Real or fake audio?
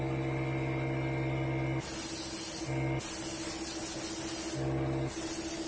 real